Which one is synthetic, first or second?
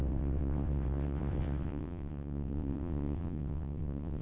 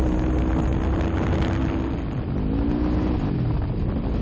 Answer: first